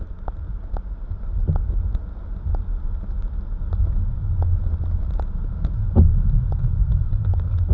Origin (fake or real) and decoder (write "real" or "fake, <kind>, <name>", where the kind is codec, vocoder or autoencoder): real